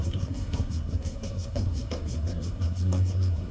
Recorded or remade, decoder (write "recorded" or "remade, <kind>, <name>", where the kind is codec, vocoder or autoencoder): remade, codec, SNAC